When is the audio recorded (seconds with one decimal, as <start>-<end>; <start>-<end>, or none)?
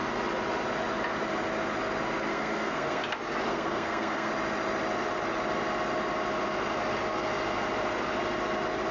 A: 0.0-2.3; 3.0-3.5; 4.3-8.9